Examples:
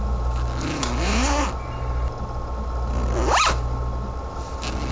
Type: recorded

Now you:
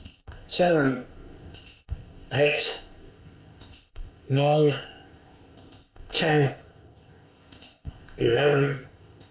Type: remade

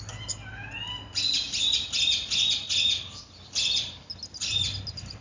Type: recorded